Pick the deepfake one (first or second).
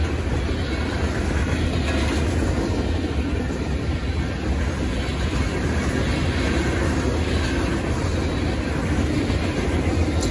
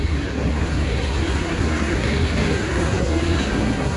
second